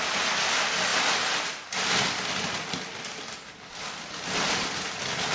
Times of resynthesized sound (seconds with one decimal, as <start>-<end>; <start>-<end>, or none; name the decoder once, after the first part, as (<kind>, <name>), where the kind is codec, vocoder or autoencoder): none